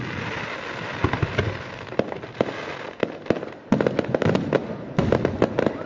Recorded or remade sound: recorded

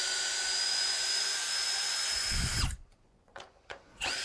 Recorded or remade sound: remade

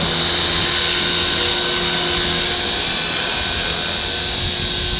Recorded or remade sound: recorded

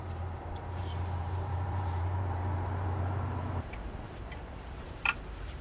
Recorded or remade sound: remade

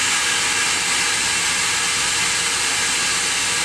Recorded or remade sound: recorded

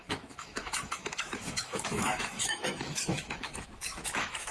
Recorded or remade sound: remade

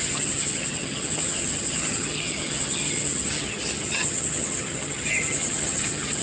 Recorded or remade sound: remade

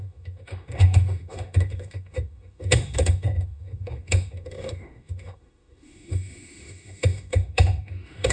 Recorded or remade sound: remade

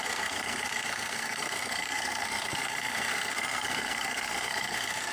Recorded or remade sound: remade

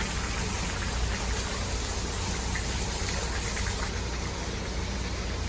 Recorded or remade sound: recorded